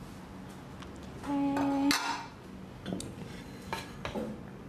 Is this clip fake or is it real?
real